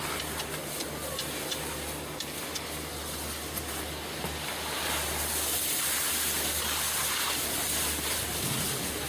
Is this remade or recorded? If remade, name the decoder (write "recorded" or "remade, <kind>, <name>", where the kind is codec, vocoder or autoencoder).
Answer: recorded